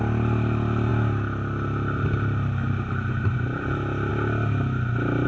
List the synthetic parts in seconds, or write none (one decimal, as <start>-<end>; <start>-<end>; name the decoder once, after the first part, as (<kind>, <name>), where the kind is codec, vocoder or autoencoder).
none